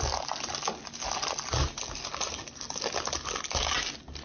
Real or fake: real